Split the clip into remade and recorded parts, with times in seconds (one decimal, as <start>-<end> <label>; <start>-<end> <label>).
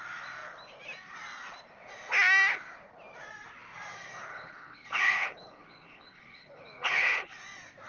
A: 0.0-4.3 recorded; 4.3-7.4 remade; 7.4-7.9 recorded